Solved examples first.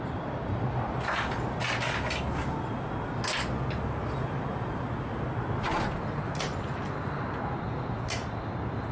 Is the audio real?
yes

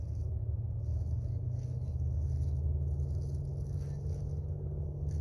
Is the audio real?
yes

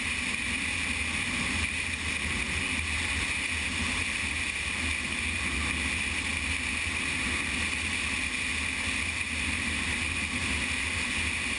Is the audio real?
yes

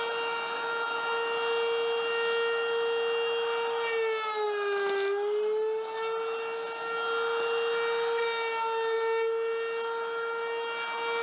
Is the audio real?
yes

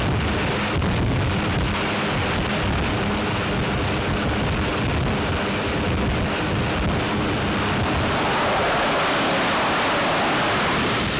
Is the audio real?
yes